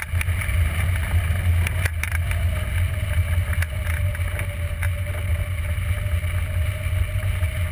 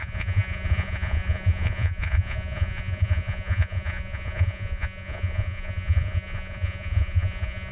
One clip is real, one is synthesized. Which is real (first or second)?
first